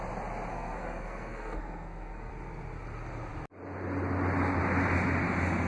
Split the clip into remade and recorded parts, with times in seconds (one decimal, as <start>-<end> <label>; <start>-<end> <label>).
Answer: 0.0-0.5 recorded; 0.5-2.3 remade; 2.3-5.7 recorded